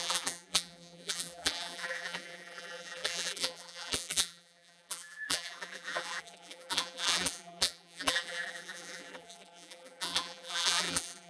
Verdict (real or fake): fake